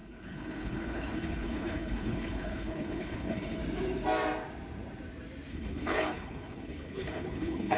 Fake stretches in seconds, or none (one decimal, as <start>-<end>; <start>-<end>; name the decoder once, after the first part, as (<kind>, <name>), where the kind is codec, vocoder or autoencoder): 0.0-3.6 (codec, HILCodec); 5.5-7.8